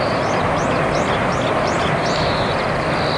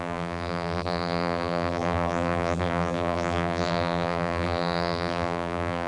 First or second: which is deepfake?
second